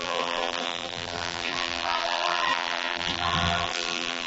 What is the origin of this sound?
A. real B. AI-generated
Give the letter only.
B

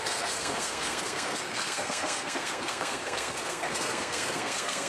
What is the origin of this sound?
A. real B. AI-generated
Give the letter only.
B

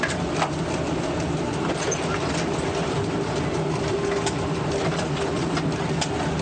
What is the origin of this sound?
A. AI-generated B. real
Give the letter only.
B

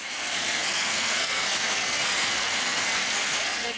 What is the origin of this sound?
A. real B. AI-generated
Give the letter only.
B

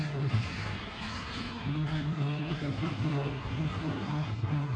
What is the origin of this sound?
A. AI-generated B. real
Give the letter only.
A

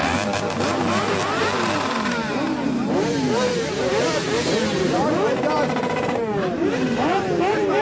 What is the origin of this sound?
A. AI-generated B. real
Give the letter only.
A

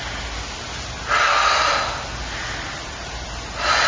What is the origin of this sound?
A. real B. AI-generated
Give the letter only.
A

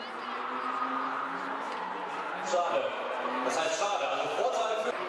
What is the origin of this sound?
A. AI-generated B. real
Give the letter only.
B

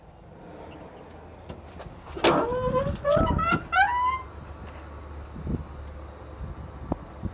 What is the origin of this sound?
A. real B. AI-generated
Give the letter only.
A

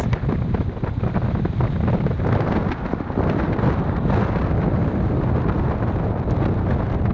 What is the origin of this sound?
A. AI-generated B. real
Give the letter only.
B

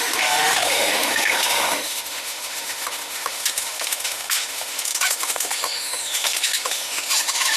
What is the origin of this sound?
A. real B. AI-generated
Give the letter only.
B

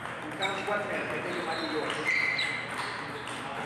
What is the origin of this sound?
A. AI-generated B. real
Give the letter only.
B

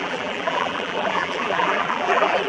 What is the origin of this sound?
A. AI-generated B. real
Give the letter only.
A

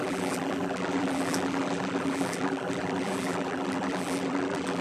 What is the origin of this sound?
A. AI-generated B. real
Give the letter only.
A